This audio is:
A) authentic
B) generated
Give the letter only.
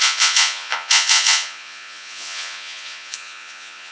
B